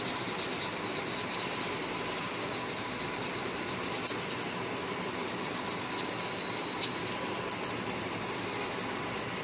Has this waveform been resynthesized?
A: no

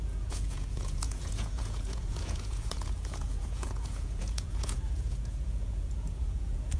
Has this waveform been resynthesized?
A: yes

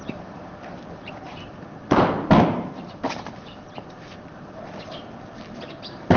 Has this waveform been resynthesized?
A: yes